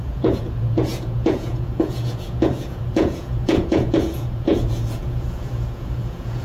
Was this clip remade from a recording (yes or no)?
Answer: yes